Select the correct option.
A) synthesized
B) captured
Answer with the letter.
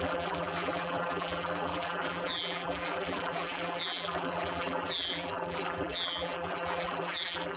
A